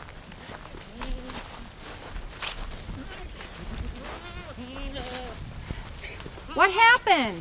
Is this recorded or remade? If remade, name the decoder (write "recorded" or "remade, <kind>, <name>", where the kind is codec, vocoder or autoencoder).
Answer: recorded